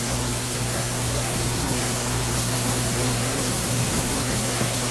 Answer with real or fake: fake